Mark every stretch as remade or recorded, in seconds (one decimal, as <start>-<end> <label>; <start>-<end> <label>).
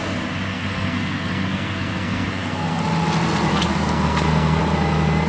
0.0-0.5 recorded; 0.5-2.8 remade; 2.8-3.5 recorded; 3.5-4.6 remade; 4.6-5.3 recorded